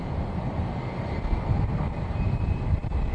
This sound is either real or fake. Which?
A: fake